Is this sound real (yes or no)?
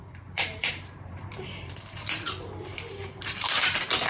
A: no